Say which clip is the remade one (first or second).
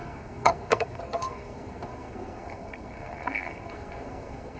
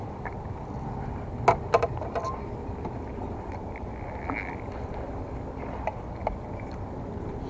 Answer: first